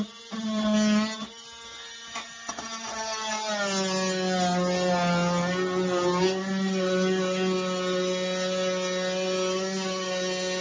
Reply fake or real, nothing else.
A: real